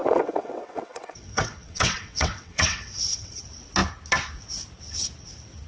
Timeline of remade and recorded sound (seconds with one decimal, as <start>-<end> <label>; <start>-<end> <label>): 0.0-3.4 remade; 3.4-5.7 recorded